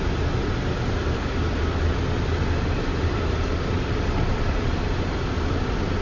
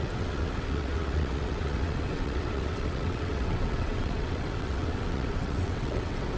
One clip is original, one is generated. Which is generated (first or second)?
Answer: second